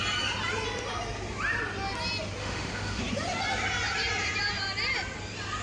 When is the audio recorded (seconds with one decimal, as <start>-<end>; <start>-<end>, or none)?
0.0-2.4; 3.0-5.6